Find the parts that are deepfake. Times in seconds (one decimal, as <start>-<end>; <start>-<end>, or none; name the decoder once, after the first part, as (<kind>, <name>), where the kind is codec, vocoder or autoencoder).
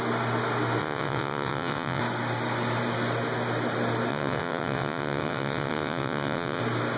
0.8-2.0 (vocoder, WaveNeXt); 4.1-6.6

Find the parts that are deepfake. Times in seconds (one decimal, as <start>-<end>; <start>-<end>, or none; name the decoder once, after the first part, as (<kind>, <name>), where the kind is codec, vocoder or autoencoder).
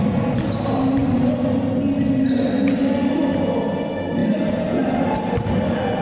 none